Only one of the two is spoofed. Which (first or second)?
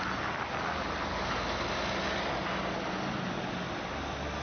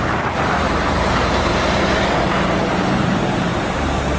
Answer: second